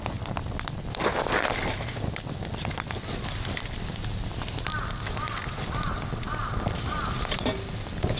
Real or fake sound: real